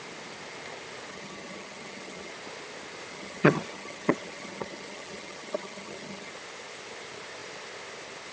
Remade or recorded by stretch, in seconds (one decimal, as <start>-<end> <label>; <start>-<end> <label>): 0.0-1.1 recorded; 1.1-2.3 remade; 2.3-3.1 recorded; 3.1-6.3 remade; 6.3-8.3 recorded